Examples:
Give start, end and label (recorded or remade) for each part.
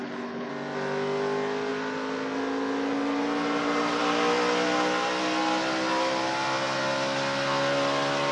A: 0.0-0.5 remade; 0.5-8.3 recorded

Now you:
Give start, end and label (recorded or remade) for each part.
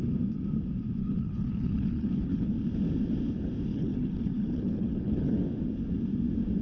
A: 0.0-1.0 recorded; 1.0-2.5 remade; 2.5-3.7 recorded; 3.7-5.4 remade; 5.4-6.6 recorded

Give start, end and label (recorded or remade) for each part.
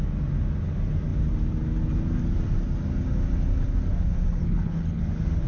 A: 0.0-4.4 recorded; 4.4-5.0 remade; 5.0-5.5 recorded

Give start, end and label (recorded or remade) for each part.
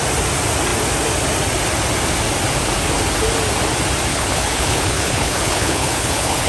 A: 0.0-4.1 recorded; 4.1-6.5 remade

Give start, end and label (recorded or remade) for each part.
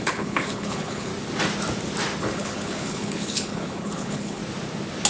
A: 0.0-1.1 remade; 1.1-2.2 recorded; 2.2-4.4 remade; 4.4-5.1 recorded